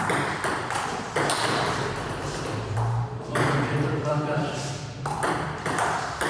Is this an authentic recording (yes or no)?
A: no